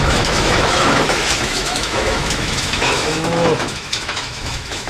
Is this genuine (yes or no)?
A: no